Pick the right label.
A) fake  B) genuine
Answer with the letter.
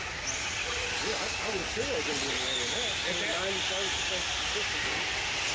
B